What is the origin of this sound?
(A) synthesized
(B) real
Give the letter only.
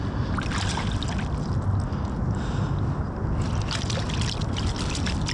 B